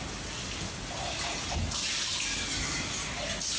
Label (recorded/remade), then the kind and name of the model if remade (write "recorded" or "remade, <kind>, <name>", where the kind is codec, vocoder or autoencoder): recorded